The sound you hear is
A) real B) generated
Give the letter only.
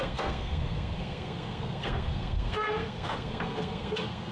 B